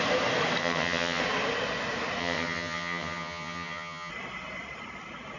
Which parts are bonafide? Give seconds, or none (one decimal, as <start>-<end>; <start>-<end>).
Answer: 0.0-0.6; 1.2-2.2; 4.1-5.4